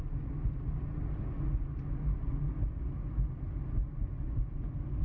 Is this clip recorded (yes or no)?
yes